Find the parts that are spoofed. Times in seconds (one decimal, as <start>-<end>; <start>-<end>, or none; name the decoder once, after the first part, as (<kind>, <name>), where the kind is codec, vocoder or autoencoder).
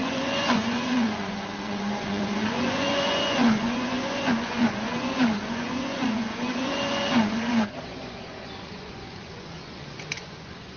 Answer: 0.0-10.8 (vocoder, Vocos)